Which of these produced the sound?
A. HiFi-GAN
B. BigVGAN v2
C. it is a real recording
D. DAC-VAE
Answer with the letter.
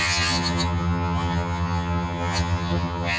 A